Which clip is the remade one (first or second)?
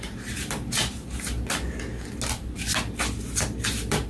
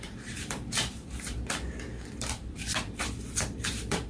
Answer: second